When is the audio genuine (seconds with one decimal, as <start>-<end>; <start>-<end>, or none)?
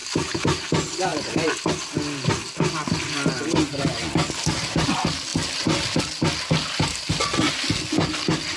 0.0-8.6